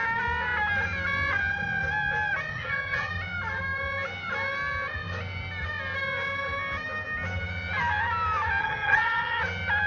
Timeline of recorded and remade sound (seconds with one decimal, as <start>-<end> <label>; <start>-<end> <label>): 0.0-2.5 recorded; 2.5-3.1 remade; 3.1-8.6 recorded; 8.6-9.4 remade; 9.4-9.9 recorded